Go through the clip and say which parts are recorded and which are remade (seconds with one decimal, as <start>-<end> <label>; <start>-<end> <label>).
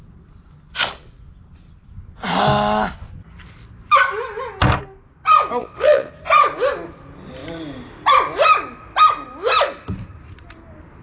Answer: 0.0-5.6 recorded; 5.6-6.1 remade; 6.1-11.0 recorded